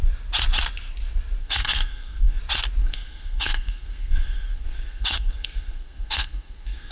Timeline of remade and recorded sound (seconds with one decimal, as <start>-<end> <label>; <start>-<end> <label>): 0.0-1.4 recorded; 1.4-2.4 remade; 2.4-2.8 recorded; 2.8-6.9 remade